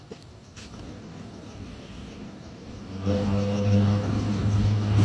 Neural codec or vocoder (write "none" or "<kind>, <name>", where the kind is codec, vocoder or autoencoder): codec, DAC